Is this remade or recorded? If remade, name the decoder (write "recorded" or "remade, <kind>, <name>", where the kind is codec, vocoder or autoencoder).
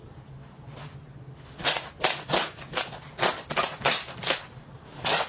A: recorded